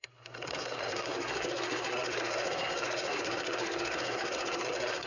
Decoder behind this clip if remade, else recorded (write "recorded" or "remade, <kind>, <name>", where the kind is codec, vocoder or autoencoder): remade, codec, SNAC